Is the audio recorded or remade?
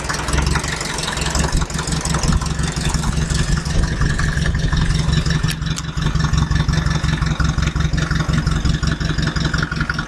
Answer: recorded